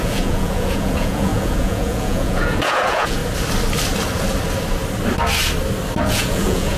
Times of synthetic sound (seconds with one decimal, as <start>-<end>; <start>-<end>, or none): 0.0-3.2; 6.0-6.8